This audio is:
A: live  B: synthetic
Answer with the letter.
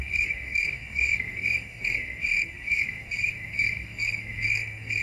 B